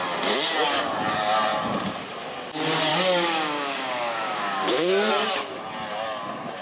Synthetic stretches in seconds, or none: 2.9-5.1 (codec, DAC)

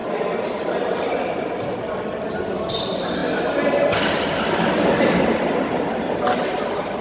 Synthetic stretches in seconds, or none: none

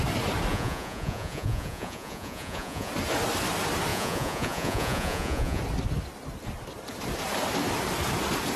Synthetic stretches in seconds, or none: 0.5-2.9 (vocoder, Vocos); 3.9-5.6

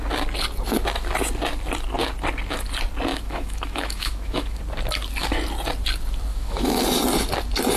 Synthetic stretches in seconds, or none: 3.1-4.6 (autoencoder, DAC-VAE); 6.3-6.8

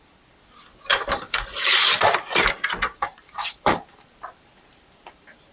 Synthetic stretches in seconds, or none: 0.9-2.0 (vocoder, BigVGAN v2); 2.8-5.5

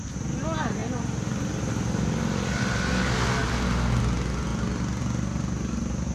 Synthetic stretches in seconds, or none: none

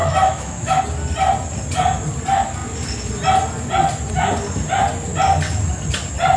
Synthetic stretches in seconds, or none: 0.0-0.8 (autoencoder, DAC-VAE)